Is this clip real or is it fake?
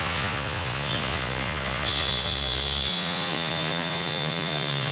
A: fake